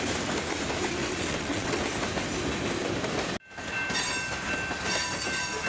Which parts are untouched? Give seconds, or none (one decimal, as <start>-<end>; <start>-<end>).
0.0-1.0; 1.8-5.7

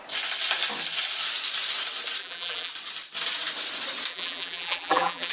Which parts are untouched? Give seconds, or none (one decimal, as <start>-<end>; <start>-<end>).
0.0-2.2; 2.7-4.1

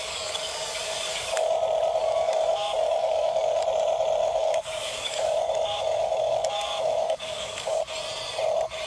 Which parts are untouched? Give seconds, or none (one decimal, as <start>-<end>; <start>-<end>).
1.5-2.0; 3.6-4.2; 7.8-8.9

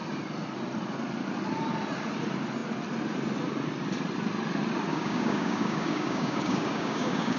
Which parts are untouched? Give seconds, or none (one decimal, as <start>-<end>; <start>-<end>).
0.0-4.9

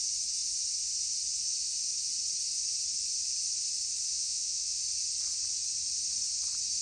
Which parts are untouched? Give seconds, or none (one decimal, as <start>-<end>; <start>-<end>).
0.0-4.1; 4.8-6.8

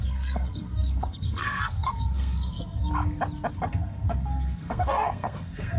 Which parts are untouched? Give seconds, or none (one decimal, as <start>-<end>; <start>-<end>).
2.9-3.5